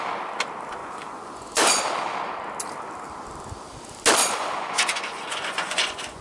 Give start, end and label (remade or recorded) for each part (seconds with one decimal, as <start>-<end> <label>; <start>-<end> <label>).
0.0-0.8 recorded; 0.8-1.8 remade; 1.8-4.2 recorded; 4.2-6.2 remade